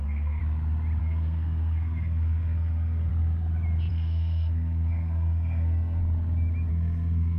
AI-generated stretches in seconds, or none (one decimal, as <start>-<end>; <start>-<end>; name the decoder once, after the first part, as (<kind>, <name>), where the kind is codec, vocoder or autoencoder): 0.0-0.4 (codec, SNAC); 1.0-3.1; 3.9-6.0; 6.7-7.4